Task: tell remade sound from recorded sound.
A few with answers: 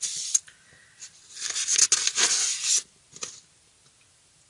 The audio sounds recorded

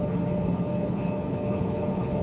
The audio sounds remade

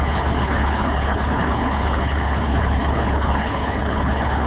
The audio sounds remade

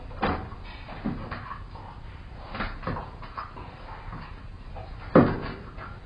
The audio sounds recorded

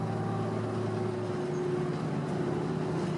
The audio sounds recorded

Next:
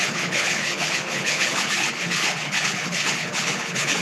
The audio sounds remade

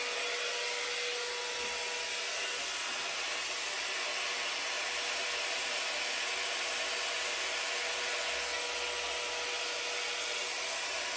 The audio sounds recorded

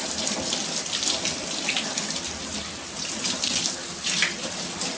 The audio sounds recorded